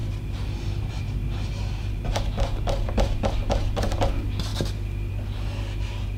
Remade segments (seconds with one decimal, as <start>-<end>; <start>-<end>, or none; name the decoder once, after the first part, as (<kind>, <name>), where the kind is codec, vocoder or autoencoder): none